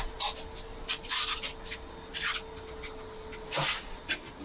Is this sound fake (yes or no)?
no